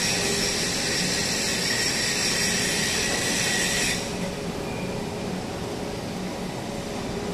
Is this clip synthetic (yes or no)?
no